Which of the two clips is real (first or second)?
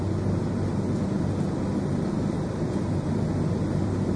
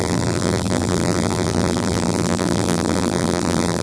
first